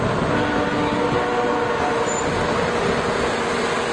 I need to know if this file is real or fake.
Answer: real